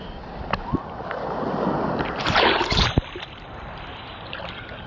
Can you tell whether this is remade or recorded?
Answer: remade